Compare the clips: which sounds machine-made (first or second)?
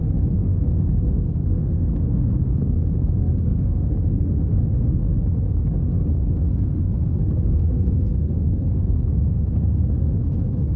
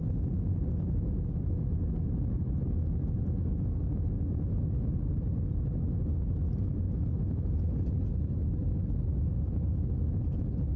first